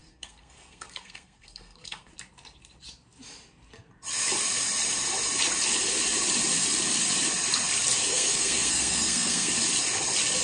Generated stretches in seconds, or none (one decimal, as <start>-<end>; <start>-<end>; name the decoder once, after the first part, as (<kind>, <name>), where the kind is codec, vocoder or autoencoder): 0.0-2.1 (codec, SNAC); 8.1-9.5